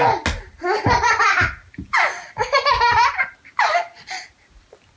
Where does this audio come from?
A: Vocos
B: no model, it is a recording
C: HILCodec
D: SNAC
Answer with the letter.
B